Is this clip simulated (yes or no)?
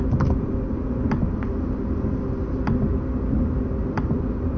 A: no